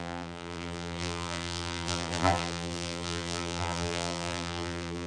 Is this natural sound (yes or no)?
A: no